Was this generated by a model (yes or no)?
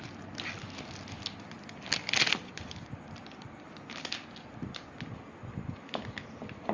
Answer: no